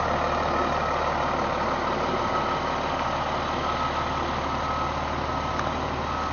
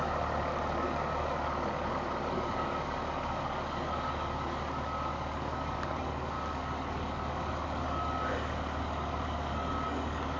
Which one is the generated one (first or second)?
second